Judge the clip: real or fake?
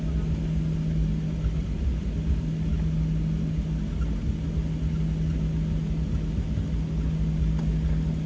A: real